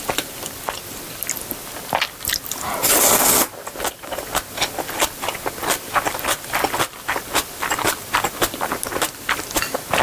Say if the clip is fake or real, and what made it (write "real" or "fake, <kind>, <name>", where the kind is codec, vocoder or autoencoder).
real